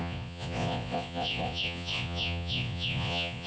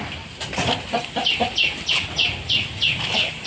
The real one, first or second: second